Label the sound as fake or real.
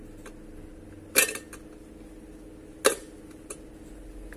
real